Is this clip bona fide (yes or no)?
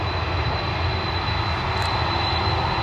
yes